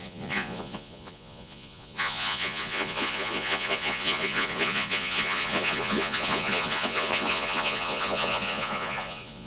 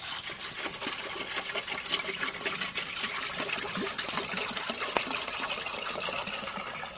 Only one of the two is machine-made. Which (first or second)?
first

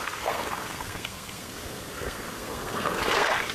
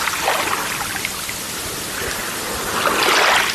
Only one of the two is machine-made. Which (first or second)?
first